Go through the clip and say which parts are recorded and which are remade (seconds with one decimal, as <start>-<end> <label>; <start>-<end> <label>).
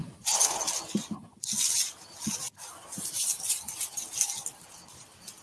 0.0-5.4 recorded